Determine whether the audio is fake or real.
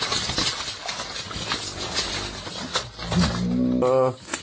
real